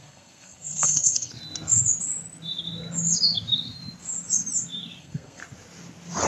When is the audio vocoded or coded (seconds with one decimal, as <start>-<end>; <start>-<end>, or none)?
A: 0.0-1.3; 5.0-5.4